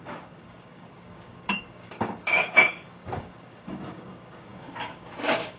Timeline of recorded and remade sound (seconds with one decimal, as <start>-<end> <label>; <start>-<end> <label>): 0.0-5.6 remade